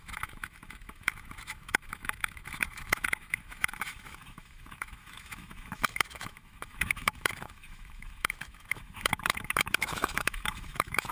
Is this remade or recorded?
remade